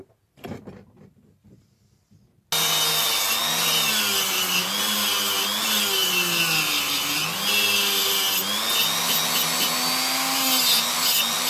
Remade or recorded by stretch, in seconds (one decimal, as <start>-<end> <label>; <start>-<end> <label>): 0.0-11.5 recorded